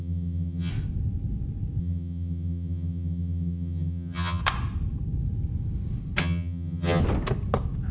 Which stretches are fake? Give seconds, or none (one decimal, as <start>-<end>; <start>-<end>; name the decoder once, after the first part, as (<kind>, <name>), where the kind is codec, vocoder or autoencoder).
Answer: 0.0-0.7 (vocoder, HiFi-GAN); 1.8-4.4; 6.2-7.0